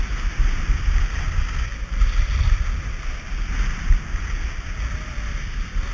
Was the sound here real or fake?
real